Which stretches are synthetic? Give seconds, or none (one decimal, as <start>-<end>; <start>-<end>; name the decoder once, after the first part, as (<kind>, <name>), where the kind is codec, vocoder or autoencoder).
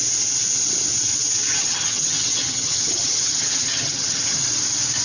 1.5-4.5 (vocoder, HiFi-GAN)